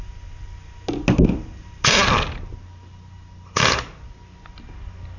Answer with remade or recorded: recorded